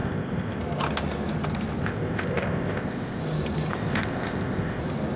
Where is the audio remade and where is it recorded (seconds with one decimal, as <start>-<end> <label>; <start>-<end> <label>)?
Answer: 0.0-0.6 remade; 0.6-1.8 recorded; 1.8-3.2 remade; 3.2-3.7 recorded; 3.7-4.8 remade; 4.8-5.2 recorded

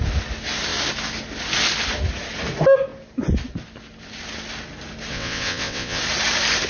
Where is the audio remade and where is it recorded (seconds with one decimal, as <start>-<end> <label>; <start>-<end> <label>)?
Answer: 0.0-5.1 recorded; 5.1-6.0 remade; 6.0-6.7 recorded

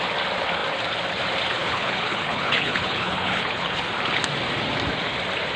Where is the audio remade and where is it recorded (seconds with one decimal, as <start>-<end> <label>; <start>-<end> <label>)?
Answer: 0.0-1.6 recorded; 1.6-3.9 remade; 3.9-5.6 recorded

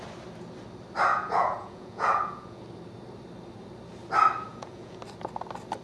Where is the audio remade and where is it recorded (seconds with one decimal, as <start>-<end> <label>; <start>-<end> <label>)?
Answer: 0.0-1.1 recorded; 1.1-2.6 remade; 2.6-4.5 recorded; 4.5-5.0 remade; 5.0-5.8 recorded